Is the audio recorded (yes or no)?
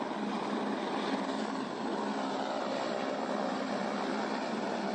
yes